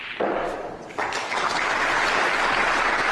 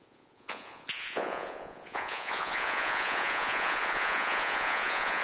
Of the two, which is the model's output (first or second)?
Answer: second